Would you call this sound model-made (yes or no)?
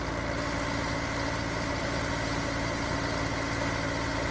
no